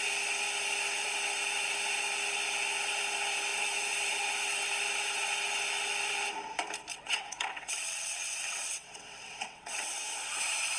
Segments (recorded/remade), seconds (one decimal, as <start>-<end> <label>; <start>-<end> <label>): 0.0-6.9 recorded; 6.9-9.9 remade; 9.9-10.8 recorded